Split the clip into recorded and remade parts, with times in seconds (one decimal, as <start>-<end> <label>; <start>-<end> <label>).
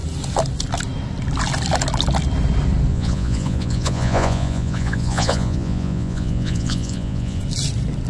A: 0.0-2.9 recorded; 2.9-7.4 remade; 7.4-8.1 recorded